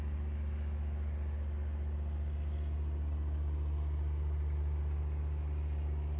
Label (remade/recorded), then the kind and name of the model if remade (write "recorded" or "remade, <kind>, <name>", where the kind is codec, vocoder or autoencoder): recorded